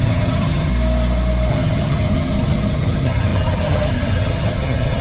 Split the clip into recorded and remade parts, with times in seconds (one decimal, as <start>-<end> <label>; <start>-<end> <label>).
0.0-0.7 remade; 0.7-1.5 recorded; 1.5-5.0 remade

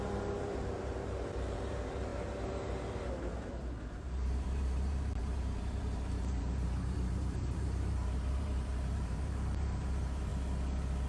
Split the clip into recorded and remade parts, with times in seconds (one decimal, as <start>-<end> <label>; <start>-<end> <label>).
0.0-10.3 remade; 10.3-11.1 recorded

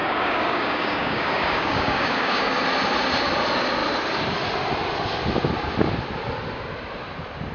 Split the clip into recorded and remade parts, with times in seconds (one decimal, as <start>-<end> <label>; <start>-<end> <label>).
0.0-2.5 remade; 2.5-7.5 recorded